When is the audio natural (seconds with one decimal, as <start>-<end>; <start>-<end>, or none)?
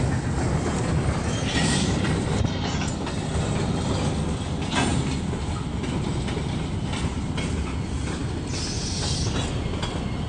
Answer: 0.0-10.3